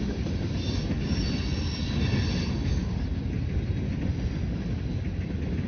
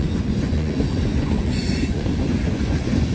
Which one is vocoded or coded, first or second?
second